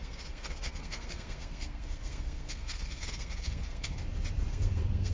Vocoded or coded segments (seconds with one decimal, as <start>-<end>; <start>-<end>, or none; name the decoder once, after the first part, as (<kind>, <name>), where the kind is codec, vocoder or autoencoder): 0.0-4.0 (codec, SNAC); 4.5-5.1